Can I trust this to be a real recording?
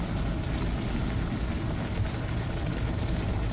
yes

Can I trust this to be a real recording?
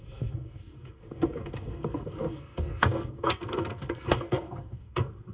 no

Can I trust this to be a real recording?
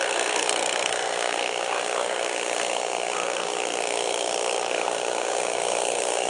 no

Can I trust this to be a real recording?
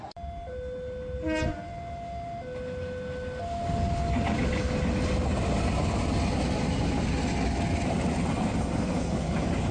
yes